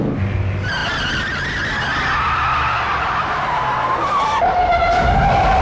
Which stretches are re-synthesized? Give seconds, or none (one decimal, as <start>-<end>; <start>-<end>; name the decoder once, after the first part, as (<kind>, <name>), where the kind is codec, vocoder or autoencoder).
none